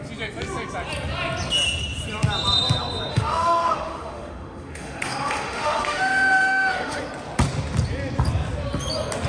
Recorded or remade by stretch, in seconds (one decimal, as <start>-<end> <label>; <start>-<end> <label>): 0.0-3.1 recorded; 3.1-7.0 remade; 7.0-9.3 recorded